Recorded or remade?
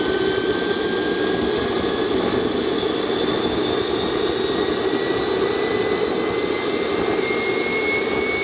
recorded